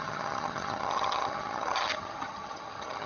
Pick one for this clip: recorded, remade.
remade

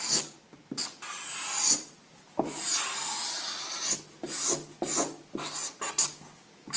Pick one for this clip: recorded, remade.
recorded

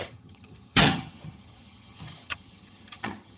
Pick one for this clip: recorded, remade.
remade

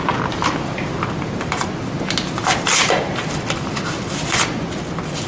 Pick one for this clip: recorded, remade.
recorded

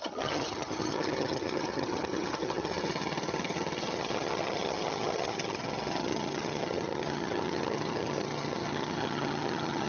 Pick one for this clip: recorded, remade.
remade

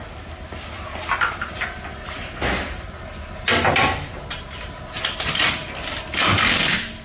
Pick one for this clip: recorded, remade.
recorded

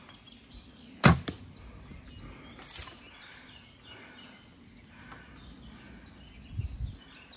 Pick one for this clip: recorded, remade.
recorded